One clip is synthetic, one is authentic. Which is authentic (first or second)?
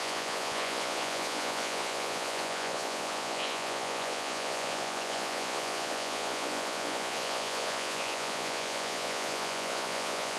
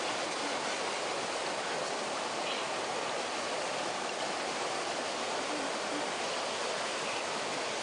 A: second